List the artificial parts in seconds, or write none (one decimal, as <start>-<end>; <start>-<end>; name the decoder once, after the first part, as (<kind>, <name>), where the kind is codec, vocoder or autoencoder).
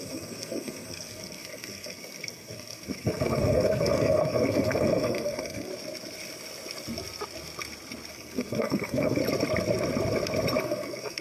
0.0-5.7 (codec, SNAC); 8.1-9.2; 10.6-11.2